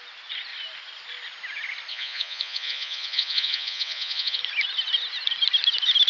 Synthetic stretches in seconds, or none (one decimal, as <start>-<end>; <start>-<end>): 1.9-4.4